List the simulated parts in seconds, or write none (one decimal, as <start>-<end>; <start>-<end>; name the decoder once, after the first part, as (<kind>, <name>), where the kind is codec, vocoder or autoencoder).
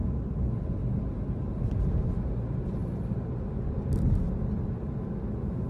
none